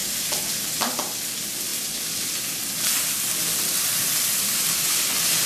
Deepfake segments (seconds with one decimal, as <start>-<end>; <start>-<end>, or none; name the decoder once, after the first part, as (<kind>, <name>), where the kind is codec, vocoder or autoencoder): 0.8-5.5 (vocoder, BigVGAN v2)